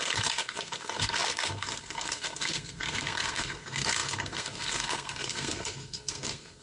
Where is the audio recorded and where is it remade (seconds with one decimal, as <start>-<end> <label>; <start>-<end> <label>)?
0.0-6.6 remade